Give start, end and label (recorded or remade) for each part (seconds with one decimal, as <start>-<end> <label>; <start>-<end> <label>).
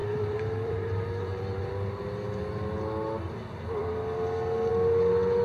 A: 0.0-2.1 remade; 2.1-5.4 recorded